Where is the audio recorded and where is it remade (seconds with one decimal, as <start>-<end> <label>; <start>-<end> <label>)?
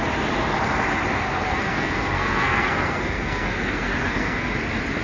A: 0.0-1.5 recorded; 1.5-4.5 remade; 4.5-5.0 recorded